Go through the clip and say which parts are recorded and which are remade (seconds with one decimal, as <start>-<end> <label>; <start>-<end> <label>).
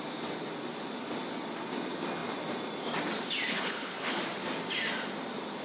0.0-3.5 recorded; 3.5-4.2 remade; 4.2-5.6 recorded